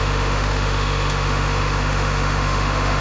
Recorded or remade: remade